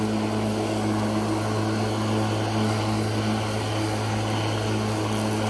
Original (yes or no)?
yes